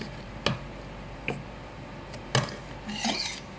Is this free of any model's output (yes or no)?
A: yes